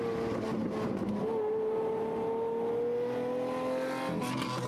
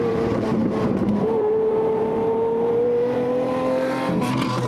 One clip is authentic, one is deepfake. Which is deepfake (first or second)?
second